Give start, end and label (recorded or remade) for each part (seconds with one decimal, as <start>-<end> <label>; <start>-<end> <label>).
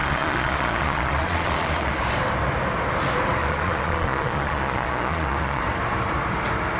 0.0-2.0 remade; 2.0-3.4 recorded; 3.4-5.6 remade; 5.6-6.8 recorded